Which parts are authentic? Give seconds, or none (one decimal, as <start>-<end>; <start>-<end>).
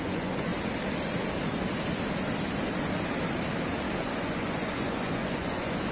0.5-4.0